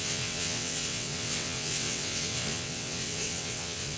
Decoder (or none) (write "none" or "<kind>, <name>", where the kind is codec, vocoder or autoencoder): vocoder, WaveNeXt